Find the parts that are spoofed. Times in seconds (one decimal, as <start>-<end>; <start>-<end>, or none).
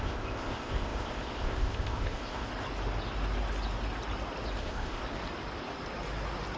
0.0-2.5; 4.6-5.0